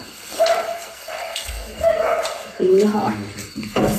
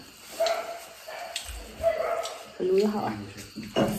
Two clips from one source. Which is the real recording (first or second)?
second